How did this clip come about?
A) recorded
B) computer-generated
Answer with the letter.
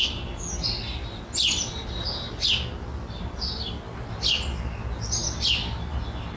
A